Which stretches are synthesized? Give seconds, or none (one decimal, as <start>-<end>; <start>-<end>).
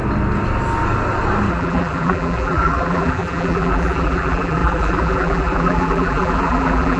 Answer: 1.5-7.0